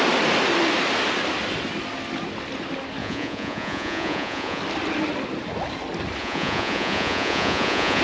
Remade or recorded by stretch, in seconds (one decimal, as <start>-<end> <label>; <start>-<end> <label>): 0.0-3.0 recorded; 3.0-4.6 remade; 4.6-6.2 recorded; 6.2-8.0 remade